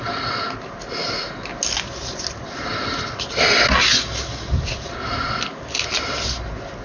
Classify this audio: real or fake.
real